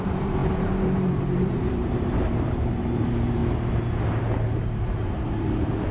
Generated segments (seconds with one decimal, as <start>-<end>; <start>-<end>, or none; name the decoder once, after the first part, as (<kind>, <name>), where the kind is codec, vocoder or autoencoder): 0.0-3.4 (vocoder, BigVGAN v2); 4.2-5.9